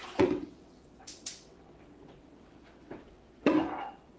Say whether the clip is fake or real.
fake